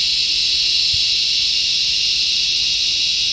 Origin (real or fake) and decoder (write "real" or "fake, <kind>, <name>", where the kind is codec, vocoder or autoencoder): real